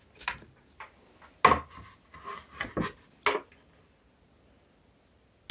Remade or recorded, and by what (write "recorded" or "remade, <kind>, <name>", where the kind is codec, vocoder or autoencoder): recorded